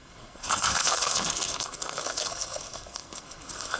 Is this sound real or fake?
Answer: fake